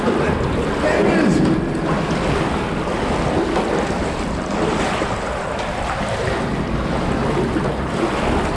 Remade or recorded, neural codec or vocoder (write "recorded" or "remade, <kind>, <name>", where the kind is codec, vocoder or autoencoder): recorded